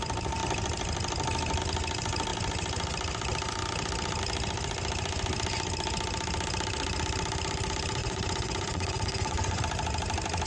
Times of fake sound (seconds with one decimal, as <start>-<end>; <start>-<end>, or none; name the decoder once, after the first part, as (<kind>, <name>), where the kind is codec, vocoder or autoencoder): 8.0-9.6 (vocoder, Vocos)